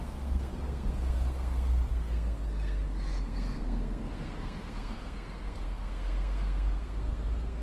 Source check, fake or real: fake